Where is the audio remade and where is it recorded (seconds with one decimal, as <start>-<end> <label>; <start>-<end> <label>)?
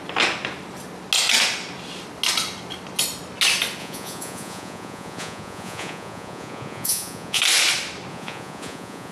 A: 0.0-3.8 recorded; 3.8-7.4 remade; 7.4-8.1 recorded; 8.1-9.1 remade